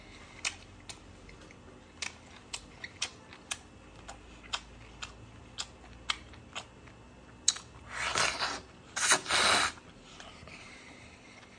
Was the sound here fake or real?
real